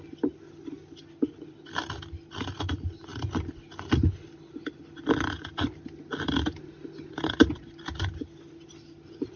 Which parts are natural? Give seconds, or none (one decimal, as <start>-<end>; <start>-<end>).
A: 0.0-9.4